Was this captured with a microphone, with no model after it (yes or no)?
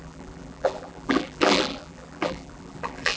no